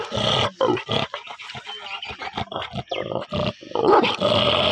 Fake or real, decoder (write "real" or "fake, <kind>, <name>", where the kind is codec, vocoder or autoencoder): real